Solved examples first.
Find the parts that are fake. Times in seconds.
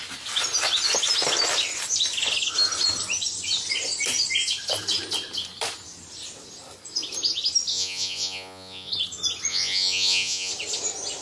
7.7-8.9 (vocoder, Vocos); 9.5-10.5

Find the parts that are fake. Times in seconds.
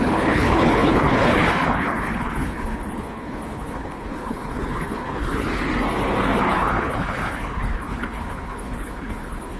0.0-5.6 (codec, HILCodec); 6.4-9.6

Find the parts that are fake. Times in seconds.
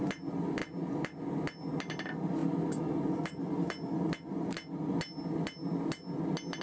none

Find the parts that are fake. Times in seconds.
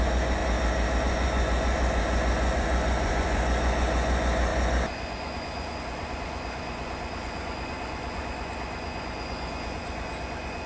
0.0-0.4 (vocoder, Vocos); 1.0-10.7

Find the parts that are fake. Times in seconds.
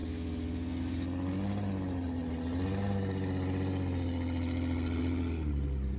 none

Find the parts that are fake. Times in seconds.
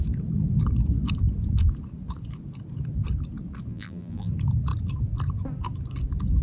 3.7-4.3 (vocoder, BigVGAN v2)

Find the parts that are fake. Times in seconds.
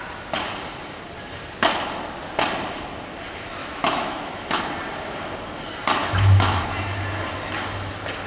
3.6-4.6 (autoencoder, DAC-VAE); 6.0-6.6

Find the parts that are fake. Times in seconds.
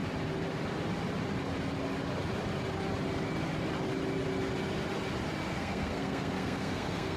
5.5-7.2 (codec, SNAC)